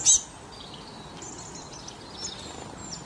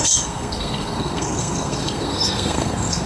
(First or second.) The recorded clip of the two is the first